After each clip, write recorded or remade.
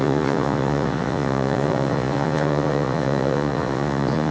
remade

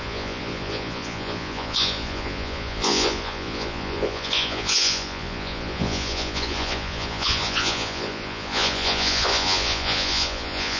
remade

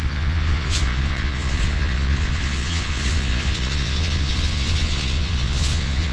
remade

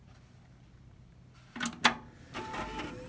recorded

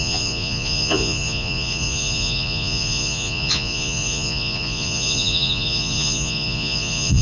remade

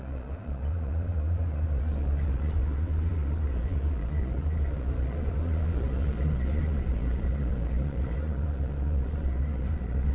remade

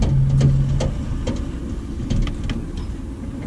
recorded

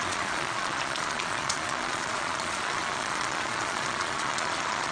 remade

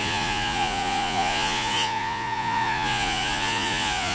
remade